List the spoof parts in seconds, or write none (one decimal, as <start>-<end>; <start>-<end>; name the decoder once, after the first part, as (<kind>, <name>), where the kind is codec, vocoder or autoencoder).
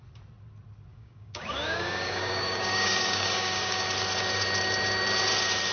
0.9-3.8 (codec, DAC)